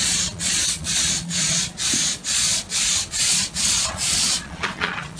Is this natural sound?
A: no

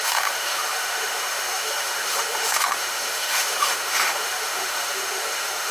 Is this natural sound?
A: no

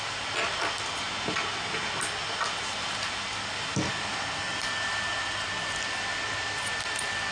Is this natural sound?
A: yes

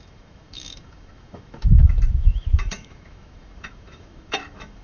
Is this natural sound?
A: no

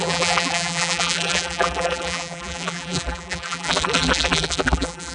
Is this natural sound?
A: no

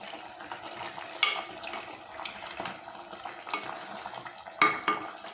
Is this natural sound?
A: yes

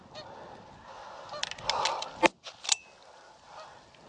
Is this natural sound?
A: yes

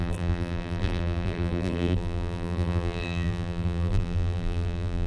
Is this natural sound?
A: no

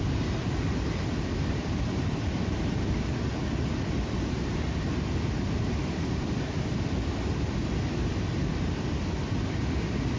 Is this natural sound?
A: no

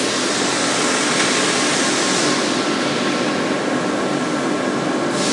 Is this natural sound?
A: yes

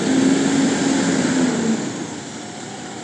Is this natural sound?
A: yes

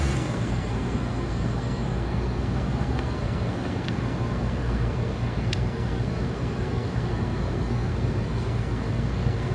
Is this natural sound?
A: no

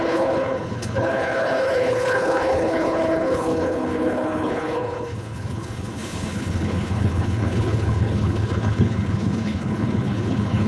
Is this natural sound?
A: no